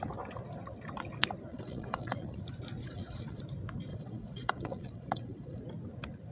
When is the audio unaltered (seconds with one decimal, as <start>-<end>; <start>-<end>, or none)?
0.0-1.5; 2.4-2.8; 3.4-3.9; 5.6-6.3